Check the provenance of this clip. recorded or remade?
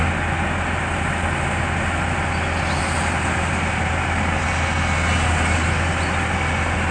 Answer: recorded